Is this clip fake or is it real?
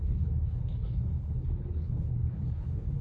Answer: fake